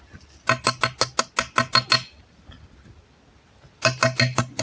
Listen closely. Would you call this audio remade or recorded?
recorded